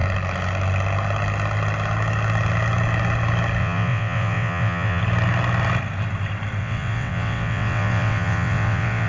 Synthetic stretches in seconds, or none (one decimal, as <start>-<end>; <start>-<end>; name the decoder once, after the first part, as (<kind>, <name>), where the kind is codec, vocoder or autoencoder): 3.6-5.0 (vocoder, WaveNeXt); 6.6-9.1